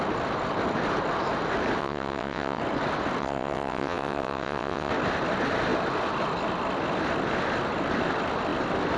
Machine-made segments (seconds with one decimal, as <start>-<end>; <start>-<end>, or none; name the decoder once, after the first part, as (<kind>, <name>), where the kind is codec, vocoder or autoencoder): 1.8-2.6 (vocoder, WaveNeXt); 3.2-4.9